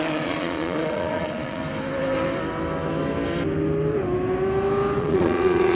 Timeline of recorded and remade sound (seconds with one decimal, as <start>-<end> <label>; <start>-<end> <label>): 0.0-1.6 remade; 1.6-5.0 recorded; 5.0-5.7 remade